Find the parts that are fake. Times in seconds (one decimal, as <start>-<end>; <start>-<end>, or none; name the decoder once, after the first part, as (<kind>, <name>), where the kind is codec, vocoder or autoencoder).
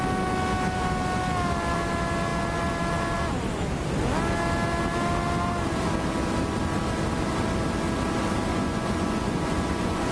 8.5-10.1 (vocoder, Vocos)